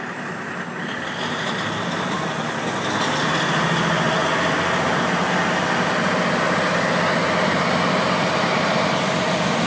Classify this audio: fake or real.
real